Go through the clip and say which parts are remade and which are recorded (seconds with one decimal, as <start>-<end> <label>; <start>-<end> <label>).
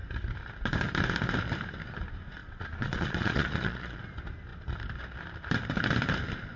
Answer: 0.0-2.4 recorded; 2.4-4.0 remade; 4.0-6.6 recorded